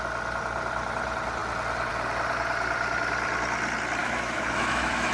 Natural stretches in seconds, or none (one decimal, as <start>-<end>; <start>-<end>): 0.0-4.0